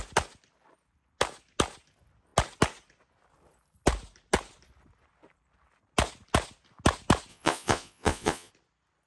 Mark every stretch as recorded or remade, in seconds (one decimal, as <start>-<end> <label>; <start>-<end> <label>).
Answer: 0.0-7.3 recorded; 7.3-8.5 remade; 8.5-9.1 recorded